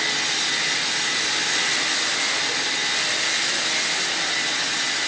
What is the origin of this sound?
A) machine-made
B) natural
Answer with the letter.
B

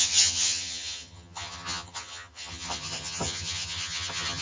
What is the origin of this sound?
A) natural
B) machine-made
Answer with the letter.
B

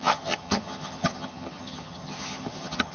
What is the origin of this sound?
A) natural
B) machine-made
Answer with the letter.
B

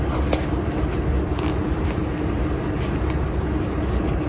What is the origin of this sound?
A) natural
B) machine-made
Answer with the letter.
A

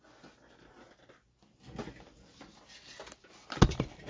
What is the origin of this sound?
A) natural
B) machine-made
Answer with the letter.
A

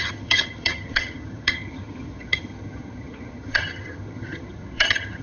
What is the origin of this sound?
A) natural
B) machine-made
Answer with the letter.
B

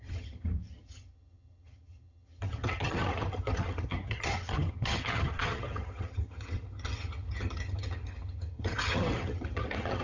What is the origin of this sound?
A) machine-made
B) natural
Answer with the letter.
A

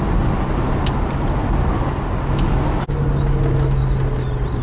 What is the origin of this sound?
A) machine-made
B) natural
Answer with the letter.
B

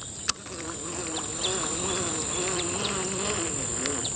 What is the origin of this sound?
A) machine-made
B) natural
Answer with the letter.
B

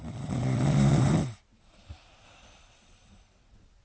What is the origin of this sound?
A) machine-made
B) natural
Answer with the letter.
B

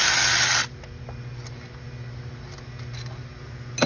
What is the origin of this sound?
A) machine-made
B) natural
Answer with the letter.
B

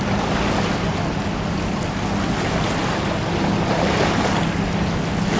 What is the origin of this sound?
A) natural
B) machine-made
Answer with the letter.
A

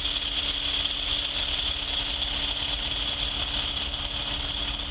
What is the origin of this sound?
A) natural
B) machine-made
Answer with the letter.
A